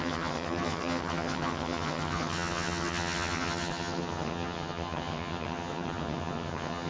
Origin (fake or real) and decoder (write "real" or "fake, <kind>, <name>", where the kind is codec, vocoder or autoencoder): fake, vocoder, HiFi-GAN